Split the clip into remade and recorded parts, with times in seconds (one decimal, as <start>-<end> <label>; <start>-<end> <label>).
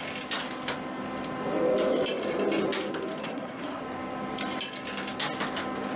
0.0-3.2 recorded; 3.2-3.8 remade; 3.8-6.0 recorded